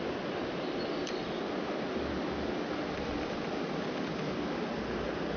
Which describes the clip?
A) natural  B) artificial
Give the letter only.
A